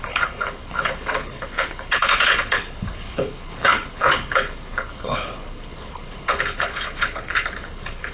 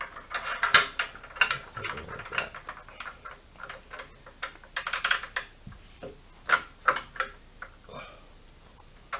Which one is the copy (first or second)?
first